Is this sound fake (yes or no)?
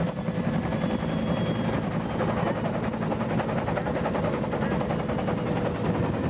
no